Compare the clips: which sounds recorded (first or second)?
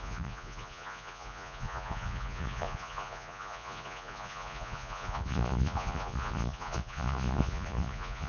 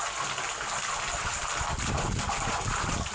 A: second